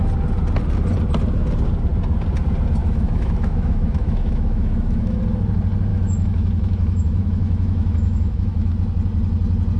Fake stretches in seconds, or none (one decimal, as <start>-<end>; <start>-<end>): 2.8-5.2; 5.9-8.7